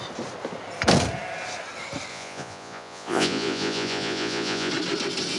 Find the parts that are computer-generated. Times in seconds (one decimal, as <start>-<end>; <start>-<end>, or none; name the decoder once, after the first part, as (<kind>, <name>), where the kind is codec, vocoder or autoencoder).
2.1-4.7 (vocoder, Vocos)